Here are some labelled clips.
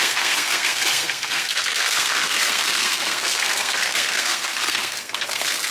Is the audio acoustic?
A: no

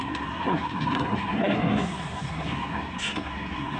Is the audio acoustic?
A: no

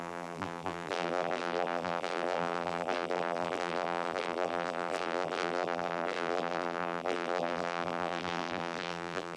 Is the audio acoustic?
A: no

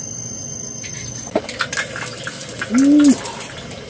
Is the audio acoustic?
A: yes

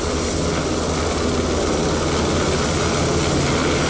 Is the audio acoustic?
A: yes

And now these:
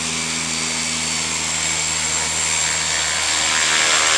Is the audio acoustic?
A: yes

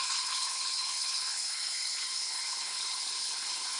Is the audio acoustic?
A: no